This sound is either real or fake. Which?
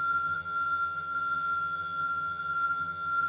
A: fake